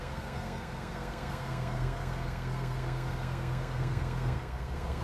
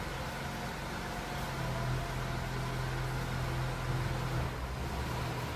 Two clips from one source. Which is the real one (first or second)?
second